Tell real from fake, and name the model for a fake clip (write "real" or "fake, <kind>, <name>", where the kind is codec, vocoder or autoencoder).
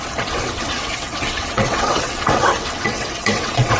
fake, vocoder, WaveNeXt